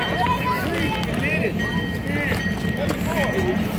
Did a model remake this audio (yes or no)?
no